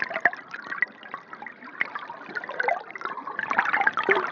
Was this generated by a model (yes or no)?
no